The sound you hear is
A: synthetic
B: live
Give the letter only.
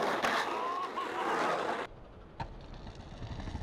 B